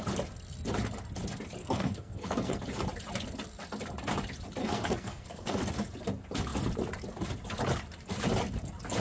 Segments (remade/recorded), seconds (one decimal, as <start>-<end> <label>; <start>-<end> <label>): 0.0-1.6 recorded; 1.6-2.6 remade; 2.6-4.6 recorded; 4.6-5.6 remade; 5.6-9.0 recorded

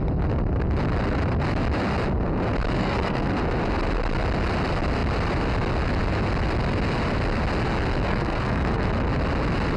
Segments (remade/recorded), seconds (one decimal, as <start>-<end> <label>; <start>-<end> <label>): 0.0-2.8 recorded; 2.8-3.3 remade; 3.3-8.1 recorded; 8.1-8.9 remade; 8.9-9.8 recorded

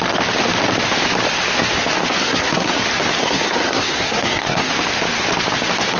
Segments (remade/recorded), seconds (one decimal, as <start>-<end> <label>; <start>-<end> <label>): 0.0-2.2 recorded; 2.2-2.8 remade; 2.8-3.2 recorded; 3.2-4.7 remade; 4.7-6.0 recorded